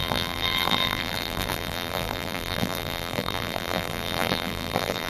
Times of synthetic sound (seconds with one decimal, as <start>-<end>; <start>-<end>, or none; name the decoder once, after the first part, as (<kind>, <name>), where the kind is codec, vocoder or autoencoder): 0.0-5.1 (vocoder, BigVGAN v2)